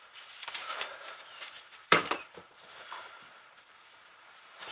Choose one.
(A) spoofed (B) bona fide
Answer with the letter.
A